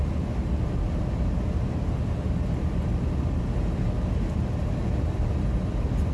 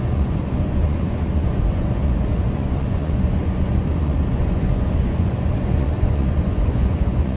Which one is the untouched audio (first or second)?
first